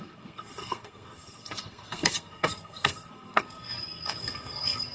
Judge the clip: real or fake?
fake